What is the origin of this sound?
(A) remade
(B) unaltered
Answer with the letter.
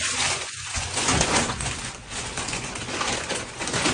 A